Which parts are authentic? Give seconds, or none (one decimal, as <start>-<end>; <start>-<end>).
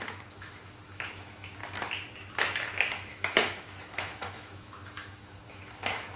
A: 1.6-3.1